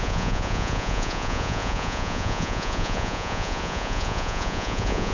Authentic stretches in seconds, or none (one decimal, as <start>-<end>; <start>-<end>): none